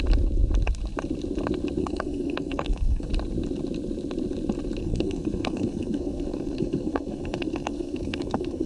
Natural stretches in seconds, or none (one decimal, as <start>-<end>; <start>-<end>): 0.0-1.8; 3.1-4.8